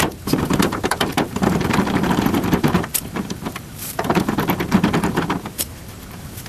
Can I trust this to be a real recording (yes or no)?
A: no